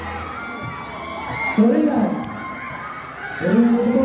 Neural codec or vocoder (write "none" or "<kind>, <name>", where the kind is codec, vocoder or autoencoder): none